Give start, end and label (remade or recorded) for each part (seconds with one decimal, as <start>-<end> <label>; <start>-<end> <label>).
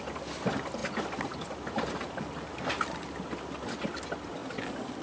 0.0-5.0 recorded